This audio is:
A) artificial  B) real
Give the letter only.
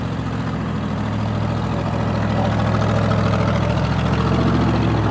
B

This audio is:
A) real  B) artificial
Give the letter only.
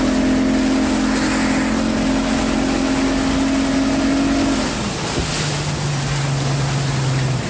A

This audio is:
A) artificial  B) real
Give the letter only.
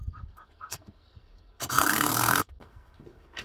A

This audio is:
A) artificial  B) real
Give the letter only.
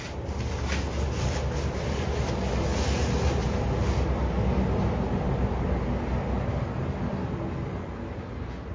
B